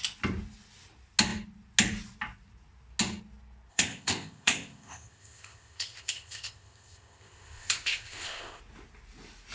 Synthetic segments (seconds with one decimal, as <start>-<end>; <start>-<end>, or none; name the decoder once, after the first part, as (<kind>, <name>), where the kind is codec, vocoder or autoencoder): 3.7-8.6 (codec, ZipCodec)